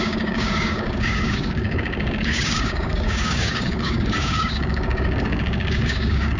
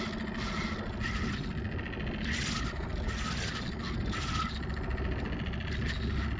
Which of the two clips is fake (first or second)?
first